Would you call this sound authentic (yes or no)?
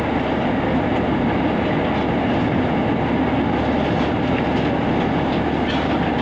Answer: yes